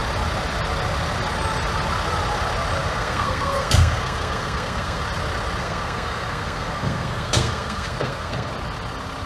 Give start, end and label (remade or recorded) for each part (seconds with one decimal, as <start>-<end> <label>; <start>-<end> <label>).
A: 0.0-2.8 recorded; 2.8-5.0 remade; 5.0-5.6 recorded; 5.6-8.5 remade; 8.5-9.3 recorded